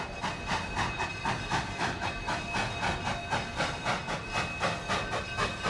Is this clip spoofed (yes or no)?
no